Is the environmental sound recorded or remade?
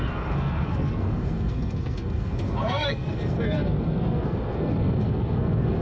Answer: remade